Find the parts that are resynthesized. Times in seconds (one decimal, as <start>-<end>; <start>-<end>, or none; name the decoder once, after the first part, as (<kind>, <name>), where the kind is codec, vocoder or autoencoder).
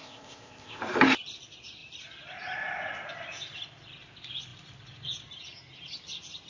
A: 0.0-0.8 (codec, ZipCodec)